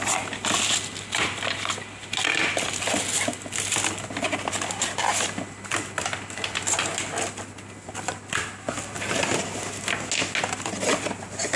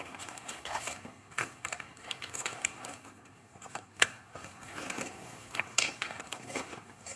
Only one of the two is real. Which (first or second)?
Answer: first